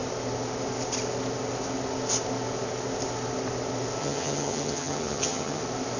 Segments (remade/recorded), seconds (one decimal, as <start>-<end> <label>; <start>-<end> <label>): 0.0-4.0 recorded; 4.0-5.6 remade; 5.6-6.0 recorded